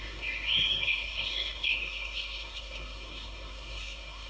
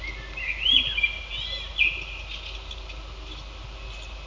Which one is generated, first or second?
first